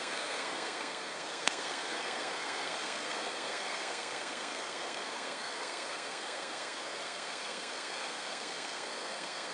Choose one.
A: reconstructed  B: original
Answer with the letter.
A